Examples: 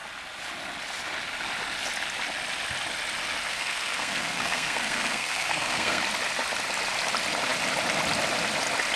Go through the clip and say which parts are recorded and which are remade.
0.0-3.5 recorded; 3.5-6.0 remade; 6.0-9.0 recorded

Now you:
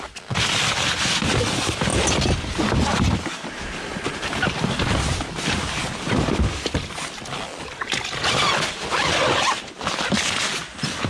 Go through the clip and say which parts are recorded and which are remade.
0.0-11.1 recorded

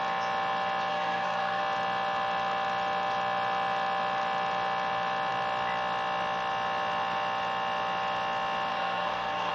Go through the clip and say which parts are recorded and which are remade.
0.0-0.9 recorded; 0.9-1.6 remade; 1.6-8.7 recorded; 8.7-9.5 remade

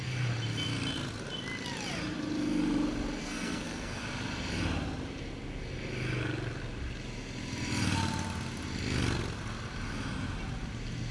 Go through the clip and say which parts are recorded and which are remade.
0.0-3.2 recorded; 3.2-4.0 remade; 4.0-11.1 recorded